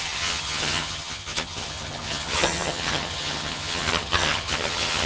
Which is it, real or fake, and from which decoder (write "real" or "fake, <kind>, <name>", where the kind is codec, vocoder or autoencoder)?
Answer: fake, vocoder, HiFi-GAN